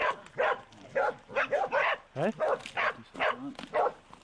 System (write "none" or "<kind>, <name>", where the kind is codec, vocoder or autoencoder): none